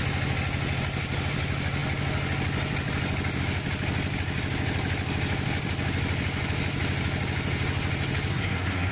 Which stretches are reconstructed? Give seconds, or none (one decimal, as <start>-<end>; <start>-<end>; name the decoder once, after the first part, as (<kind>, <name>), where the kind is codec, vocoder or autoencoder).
8.3-8.9 (codec, SNAC)